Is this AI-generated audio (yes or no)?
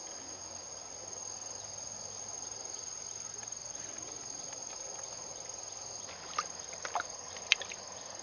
no